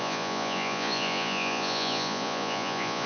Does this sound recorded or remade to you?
remade